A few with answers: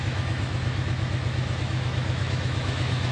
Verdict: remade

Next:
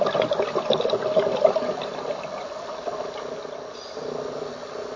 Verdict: recorded